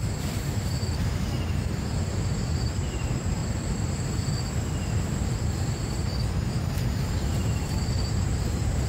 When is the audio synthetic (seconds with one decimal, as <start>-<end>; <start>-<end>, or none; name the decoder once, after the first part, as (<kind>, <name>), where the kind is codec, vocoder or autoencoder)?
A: 0.0-3.4 (vocoder, BigVGAN v2); 6.5-8.9